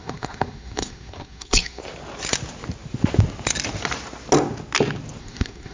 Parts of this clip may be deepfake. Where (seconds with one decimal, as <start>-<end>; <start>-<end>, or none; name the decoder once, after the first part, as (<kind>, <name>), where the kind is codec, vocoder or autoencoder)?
0.0-1.8 (codec, SNAC); 5.2-5.7